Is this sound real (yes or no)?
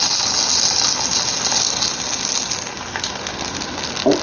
yes